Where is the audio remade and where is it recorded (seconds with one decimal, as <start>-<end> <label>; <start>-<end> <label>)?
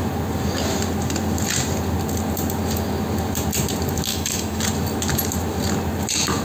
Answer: 0.0-4.1 recorded; 4.1-4.6 remade; 4.6-6.4 recorded